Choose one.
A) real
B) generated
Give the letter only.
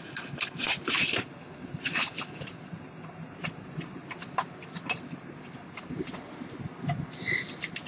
A